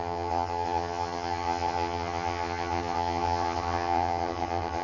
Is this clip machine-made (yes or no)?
yes